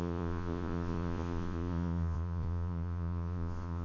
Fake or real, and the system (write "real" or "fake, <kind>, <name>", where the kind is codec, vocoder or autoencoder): fake, vocoder, Vocos